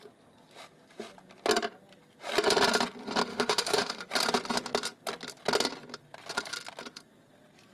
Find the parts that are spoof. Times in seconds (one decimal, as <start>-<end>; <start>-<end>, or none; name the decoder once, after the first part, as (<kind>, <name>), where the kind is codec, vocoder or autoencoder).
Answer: 3.3-4.1 (autoencoder, DAC-VAE)